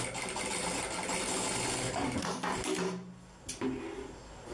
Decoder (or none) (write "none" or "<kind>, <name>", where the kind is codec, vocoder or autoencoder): none